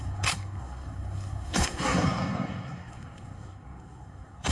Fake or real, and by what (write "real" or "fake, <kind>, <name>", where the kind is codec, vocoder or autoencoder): fake, codec, SNAC